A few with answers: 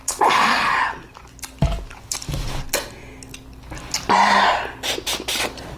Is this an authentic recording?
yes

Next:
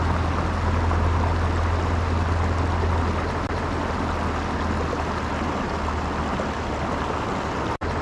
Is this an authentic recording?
yes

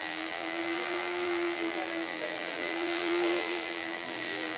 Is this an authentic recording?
no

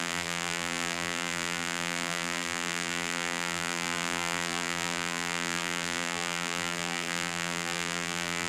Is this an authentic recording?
no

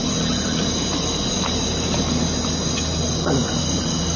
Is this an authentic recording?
yes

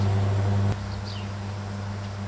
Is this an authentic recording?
yes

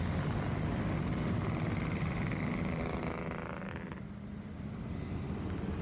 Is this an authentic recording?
yes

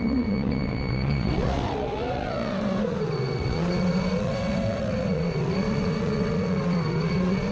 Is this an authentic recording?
no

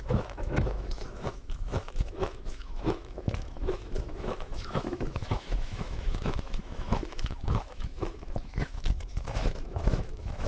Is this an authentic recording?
no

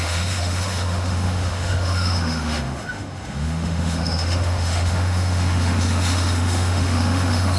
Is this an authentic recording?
no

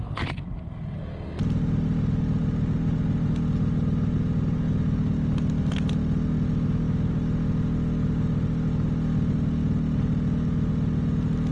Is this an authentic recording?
yes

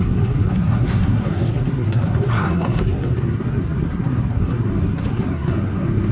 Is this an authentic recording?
no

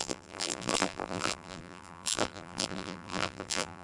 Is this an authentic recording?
no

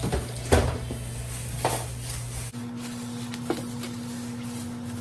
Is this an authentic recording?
yes